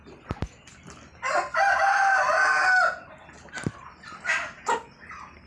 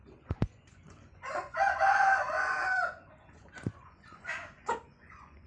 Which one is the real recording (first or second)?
first